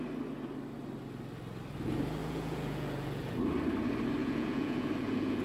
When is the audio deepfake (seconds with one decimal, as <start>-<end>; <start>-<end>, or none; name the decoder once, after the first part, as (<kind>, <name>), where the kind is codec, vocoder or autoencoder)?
2.2-3.3 (vocoder, Vocos); 4.2-5.4